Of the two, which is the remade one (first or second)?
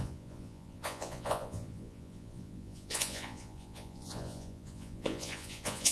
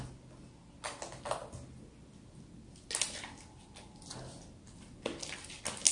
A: first